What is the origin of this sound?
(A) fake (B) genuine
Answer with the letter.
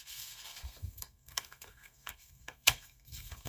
A